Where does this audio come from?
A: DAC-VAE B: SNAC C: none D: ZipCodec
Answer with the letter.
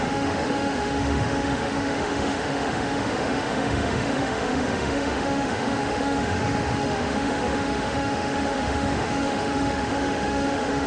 A